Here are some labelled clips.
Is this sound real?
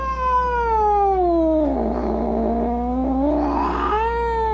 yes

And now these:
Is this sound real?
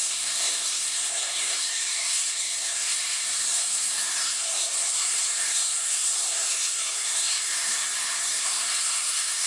no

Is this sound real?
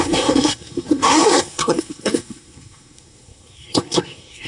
no